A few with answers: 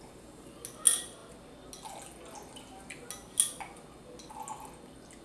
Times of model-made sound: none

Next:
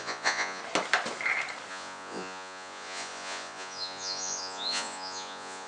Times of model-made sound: 0.0-0.6 (vocoder, Vocos); 1.7-5.7

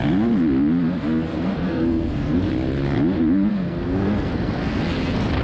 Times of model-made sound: 1.3-2.5 (codec, SNAC); 3.5-4.8